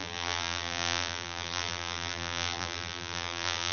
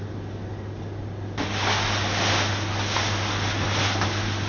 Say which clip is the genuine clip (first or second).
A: second